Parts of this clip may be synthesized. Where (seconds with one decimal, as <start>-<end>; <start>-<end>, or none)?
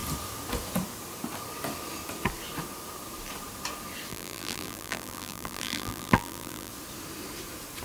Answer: 4.1-6.7